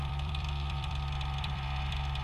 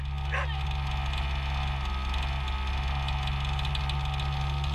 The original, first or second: second